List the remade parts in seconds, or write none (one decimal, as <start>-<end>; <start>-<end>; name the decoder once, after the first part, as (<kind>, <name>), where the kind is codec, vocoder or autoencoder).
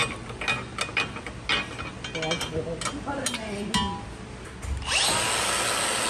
none